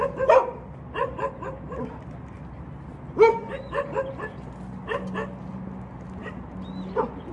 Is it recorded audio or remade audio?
recorded